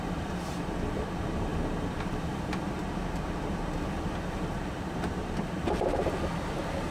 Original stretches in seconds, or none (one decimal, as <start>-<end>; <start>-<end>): none